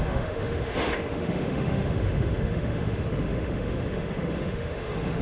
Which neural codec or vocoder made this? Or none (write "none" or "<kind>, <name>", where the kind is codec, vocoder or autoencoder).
autoencoder, DAC-VAE